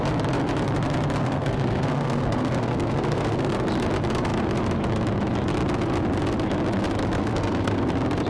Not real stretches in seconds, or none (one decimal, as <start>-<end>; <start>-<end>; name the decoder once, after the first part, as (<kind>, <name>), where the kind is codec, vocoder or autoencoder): 1.2-3.5 (codec, SNAC); 7.2-7.9